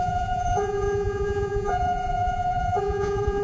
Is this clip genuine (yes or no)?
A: no